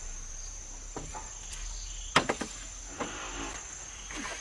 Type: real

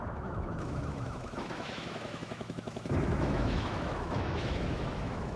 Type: fake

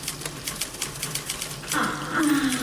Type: real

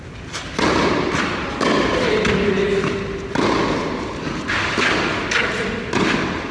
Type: real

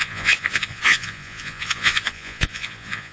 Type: fake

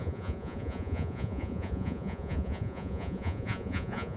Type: fake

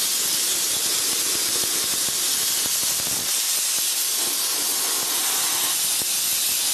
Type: real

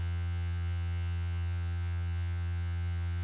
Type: fake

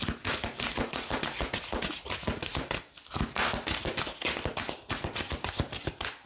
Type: real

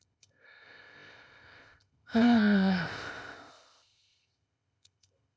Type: fake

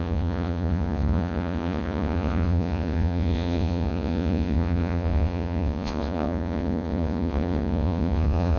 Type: fake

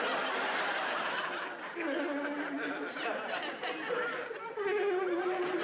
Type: real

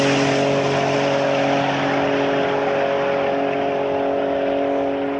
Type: real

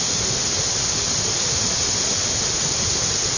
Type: real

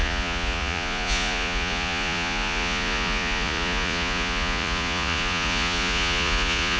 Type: fake